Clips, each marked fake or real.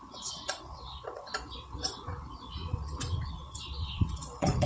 fake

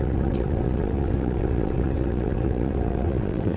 fake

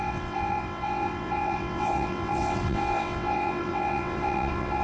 fake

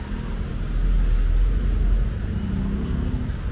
real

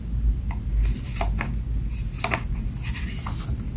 real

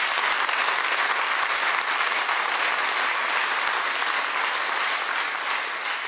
real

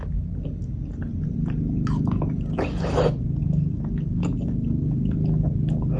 real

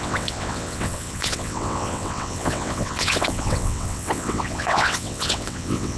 fake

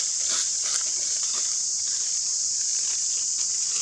real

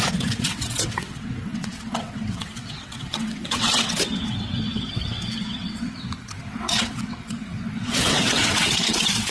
fake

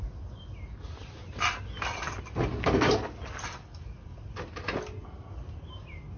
real